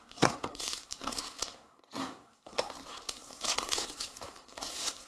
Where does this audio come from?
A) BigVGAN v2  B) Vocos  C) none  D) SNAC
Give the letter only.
D